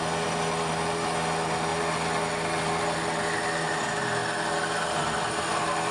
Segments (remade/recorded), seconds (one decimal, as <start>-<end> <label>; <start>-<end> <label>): 0.0-5.9 recorded